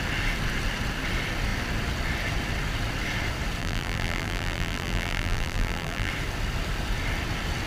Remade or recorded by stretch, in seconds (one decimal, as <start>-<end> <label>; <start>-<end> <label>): 0.0-3.6 recorded; 3.6-6.1 remade; 6.1-7.7 recorded